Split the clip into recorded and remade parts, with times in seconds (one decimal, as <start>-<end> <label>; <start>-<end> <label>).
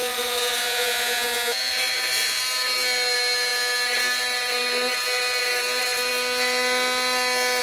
0.0-2.4 remade; 2.4-7.6 recorded